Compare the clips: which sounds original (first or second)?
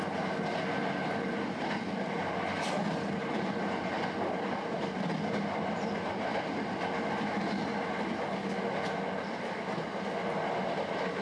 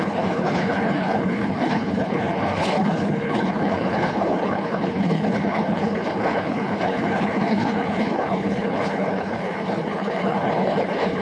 first